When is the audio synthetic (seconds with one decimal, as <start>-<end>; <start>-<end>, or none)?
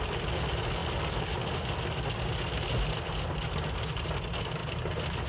none